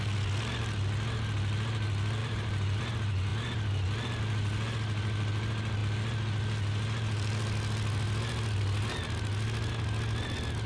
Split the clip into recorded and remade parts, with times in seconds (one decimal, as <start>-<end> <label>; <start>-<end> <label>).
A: 0.0-2.2 recorded; 2.2-2.8 remade; 2.8-10.7 recorded